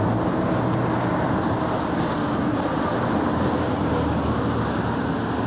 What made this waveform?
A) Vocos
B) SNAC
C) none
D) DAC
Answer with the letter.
C